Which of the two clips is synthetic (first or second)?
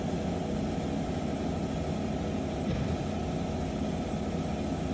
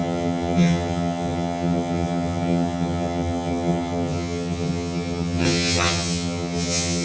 second